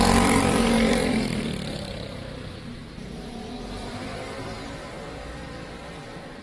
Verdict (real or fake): fake